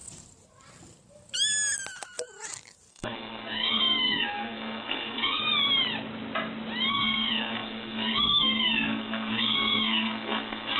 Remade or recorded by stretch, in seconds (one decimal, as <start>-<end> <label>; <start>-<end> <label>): 0.0-2.9 recorded; 2.9-5.4 remade; 5.4-6.9 recorded; 6.9-10.8 remade